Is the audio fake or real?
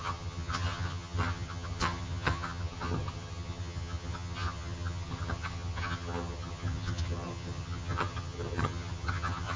fake